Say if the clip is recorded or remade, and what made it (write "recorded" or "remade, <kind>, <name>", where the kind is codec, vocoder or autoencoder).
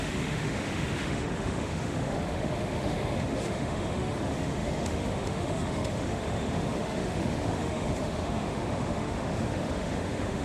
remade, autoencoder, DAC-VAE